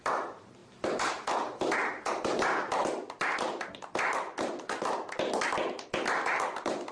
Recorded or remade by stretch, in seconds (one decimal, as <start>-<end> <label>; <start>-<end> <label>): 0.0-0.6 recorded; 0.6-2.1 remade; 2.1-2.8 recorded; 2.8-5.1 remade; 5.1-6.9 recorded